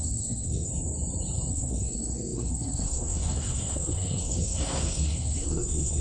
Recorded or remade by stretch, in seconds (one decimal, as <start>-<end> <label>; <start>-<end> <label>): 0.0-0.7 remade; 0.7-1.5 recorded; 1.5-6.0 remade